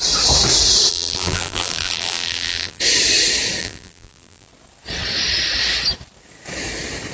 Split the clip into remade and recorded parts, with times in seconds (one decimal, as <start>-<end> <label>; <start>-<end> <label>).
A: 0.0-0.9 recorded; 0.9-2.8 remade; 2.8-3.6 recorded; 3.6-4.5 remade; 4.5-7.1 recorded